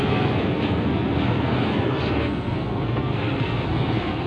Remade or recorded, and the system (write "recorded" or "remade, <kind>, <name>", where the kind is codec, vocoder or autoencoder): remade, codec, SNAC